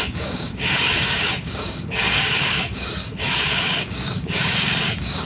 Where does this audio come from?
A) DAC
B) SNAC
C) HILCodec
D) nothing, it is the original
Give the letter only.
A